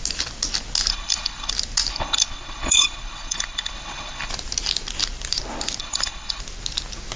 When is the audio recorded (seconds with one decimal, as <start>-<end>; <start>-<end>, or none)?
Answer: 0.0-0.9; 1.5-1.9; 4.3-5.8; 6.4-7.2